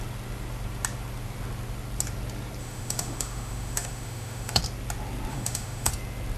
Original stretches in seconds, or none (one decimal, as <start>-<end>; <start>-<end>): 0.0-2.6; 4.6-5.3; 5.9-6.4